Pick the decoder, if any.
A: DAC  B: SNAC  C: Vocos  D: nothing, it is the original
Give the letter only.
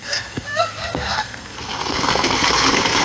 B